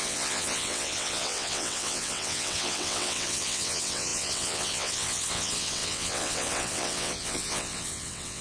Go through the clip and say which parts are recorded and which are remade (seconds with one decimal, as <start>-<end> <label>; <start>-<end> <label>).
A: 0.0-8.4 remade